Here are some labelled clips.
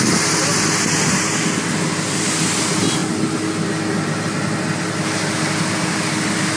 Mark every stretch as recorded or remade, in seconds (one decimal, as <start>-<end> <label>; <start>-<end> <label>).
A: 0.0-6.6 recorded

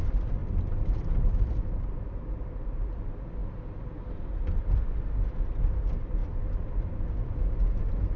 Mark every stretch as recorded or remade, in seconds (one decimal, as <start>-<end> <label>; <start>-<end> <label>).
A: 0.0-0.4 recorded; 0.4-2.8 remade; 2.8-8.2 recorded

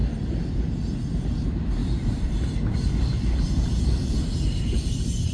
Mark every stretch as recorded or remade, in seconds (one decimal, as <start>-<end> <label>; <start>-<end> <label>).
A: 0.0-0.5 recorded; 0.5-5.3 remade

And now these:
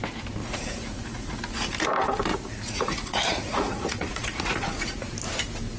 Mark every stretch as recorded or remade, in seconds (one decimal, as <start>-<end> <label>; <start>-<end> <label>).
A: 0.0-0.4 recorded; 0.4-1.4 remade; 1.4-2.3 recorded; 2.3-5.1 remade; 5.1-5.8 recorded

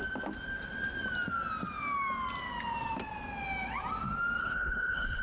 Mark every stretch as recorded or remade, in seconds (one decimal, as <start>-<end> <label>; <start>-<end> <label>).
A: 0.0-4.4 recorded; 4.4-5.2 remade